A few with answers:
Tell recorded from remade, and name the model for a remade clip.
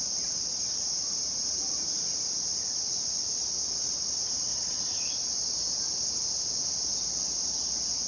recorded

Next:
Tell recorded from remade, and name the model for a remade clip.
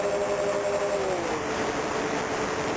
recorded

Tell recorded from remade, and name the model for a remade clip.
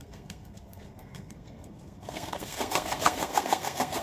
remade, codec, SNAC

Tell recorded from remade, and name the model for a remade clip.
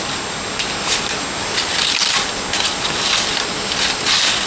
recorded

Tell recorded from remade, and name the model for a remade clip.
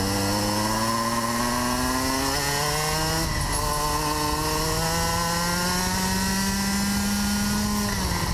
recorded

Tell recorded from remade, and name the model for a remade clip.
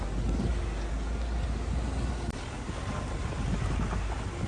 recorded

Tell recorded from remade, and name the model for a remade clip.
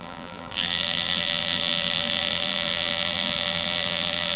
remade, vocoder, BigVGAN v2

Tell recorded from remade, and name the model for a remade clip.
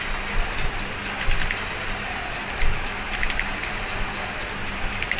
recorded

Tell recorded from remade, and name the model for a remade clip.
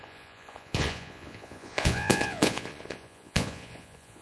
remade, vocoder, Vocos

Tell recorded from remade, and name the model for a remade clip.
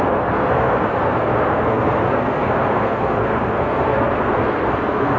remade, codec, SNAC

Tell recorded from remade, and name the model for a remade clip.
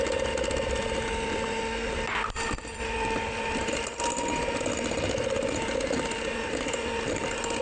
recorded